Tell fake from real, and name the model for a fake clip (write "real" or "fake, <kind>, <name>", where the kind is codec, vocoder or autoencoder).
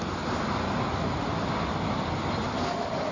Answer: real